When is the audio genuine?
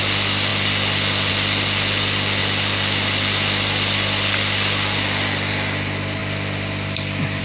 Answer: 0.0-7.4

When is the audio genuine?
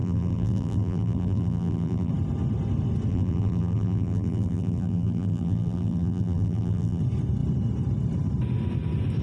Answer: 2.1-3.1; 7.0-9.2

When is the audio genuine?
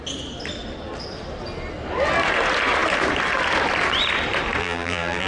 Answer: 0.0-4.6